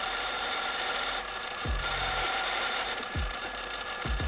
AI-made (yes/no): yes